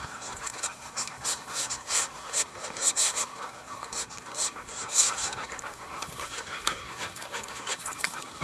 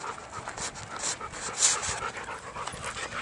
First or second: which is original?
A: second